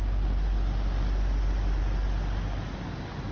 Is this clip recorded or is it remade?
recorded